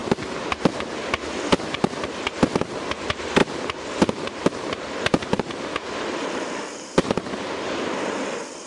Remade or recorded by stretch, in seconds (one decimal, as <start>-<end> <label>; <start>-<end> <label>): 0.0-1.0 remade; 1.0-3.4 recorded; 3.4-7.3 remade; 7.3-8.7 recorded